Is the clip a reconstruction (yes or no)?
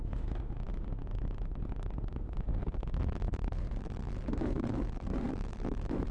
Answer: yes